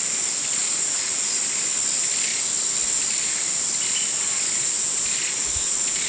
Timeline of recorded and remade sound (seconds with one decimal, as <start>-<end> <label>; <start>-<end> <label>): 0.0-0.6 recorded; 0.6-1.4 remade; 1.4-5.2 recorded; 5.2-6.1 remade